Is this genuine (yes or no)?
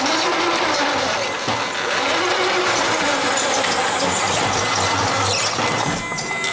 yes